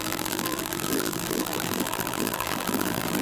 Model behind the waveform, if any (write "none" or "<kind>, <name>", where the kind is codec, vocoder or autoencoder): vocoder, BigVGAN v2